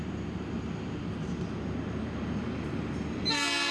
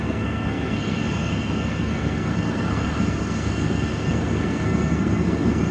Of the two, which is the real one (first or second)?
first